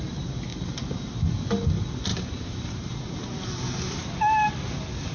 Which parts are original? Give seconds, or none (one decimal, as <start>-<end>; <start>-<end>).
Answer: 0.0-2.1; 4.1-5.1